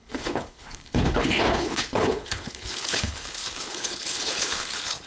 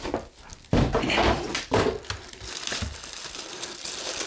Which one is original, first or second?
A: second